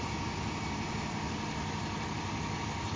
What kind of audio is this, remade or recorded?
recorded